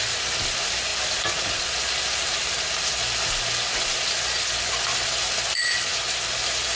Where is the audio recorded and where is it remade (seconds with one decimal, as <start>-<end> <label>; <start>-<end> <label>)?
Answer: 0.0-6.8 recorded